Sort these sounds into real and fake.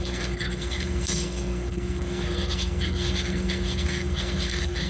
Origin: fake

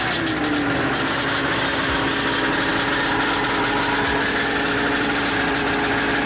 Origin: real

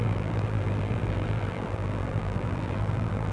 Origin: fake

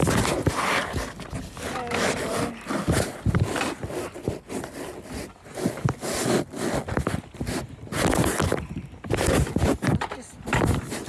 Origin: real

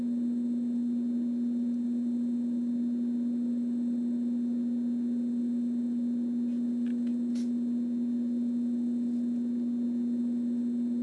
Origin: real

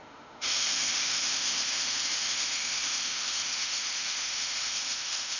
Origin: fake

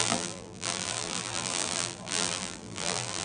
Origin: fake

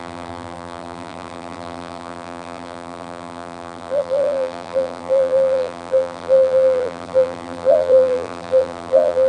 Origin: fake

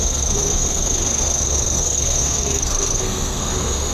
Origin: fake